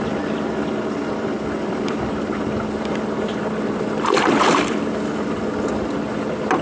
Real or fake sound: fake